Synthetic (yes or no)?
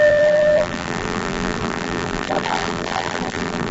yes